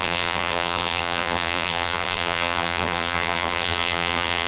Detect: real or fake fake